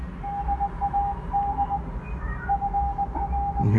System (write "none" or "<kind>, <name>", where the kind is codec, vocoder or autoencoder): none